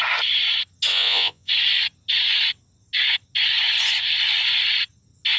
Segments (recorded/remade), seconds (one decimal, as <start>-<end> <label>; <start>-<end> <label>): 0.0-0.9 recorded; 0.9-1.5 remade; 1.5-5.4 recorded